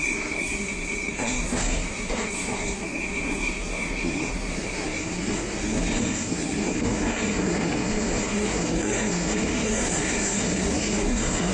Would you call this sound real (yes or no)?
no